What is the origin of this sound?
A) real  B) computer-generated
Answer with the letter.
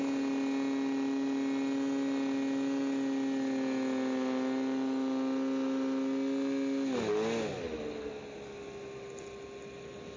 A